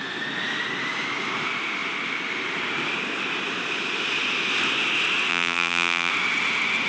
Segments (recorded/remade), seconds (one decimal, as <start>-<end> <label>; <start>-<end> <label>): 0.0-5.3 recorded; 5.3-6.1 remade; 6.1-6.9 recorded